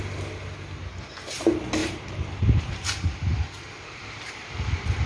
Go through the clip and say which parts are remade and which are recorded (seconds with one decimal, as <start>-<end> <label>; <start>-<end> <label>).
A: 0.0-1.8 recorded; 1.8-5.1 remade